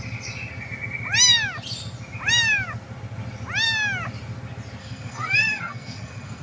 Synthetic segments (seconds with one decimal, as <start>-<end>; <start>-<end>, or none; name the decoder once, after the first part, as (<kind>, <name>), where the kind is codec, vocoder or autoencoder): 4.8-6.4 (codec, SNAC)